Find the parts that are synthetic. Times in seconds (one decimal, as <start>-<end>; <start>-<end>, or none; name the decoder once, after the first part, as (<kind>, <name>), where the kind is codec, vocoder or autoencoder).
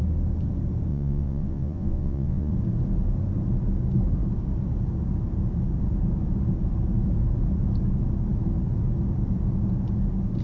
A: 0.9-2.5 (vocoder, Vocos)